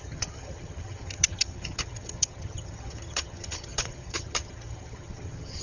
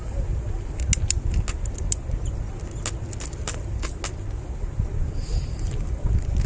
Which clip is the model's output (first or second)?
first